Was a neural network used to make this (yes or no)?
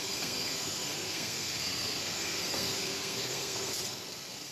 yes